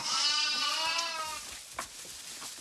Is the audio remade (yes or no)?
no